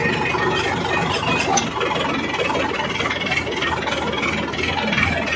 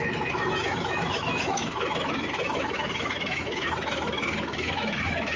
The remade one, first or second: second